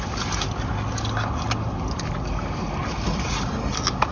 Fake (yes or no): no